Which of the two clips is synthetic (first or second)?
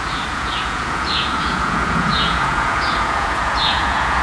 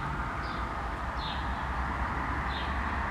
first